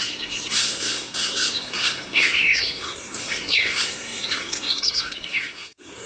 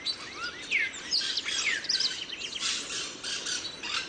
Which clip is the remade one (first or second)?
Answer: first